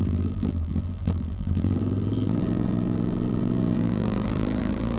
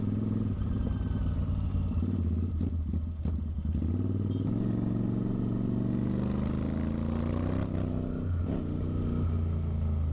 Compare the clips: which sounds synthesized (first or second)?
first